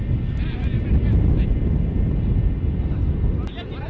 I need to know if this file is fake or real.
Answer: real